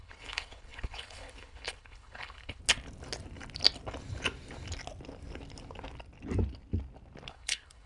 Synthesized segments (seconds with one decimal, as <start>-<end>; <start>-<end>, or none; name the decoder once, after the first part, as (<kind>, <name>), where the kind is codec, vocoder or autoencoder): 0.0-2.6 (codec, HILCodec); 7.3-7.9